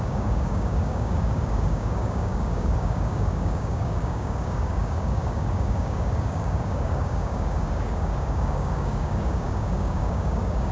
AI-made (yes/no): yes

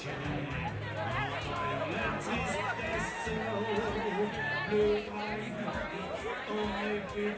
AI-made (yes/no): no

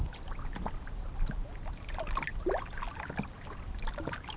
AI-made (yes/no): no